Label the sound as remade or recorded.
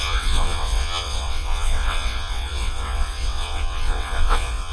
remade